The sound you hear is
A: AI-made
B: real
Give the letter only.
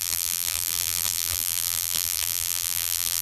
A